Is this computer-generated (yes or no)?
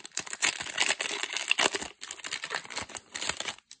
no